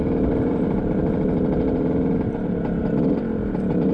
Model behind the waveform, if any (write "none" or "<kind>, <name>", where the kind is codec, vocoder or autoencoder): none